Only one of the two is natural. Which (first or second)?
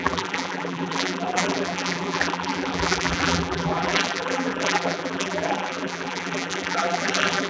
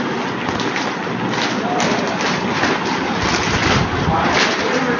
second